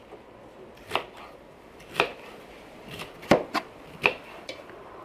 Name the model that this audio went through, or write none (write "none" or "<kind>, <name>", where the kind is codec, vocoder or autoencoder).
vocoder, BigVGAN v2